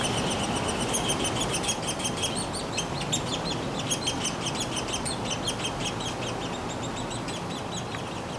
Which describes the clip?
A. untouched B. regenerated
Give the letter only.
A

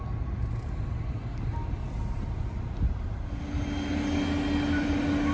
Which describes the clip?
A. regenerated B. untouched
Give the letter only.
B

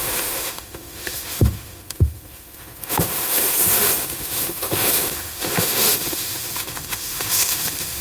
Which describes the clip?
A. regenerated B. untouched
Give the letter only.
A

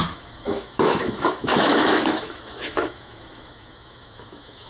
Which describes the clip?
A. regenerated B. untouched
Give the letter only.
A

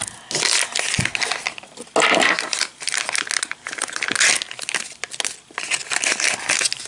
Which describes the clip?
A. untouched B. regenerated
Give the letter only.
A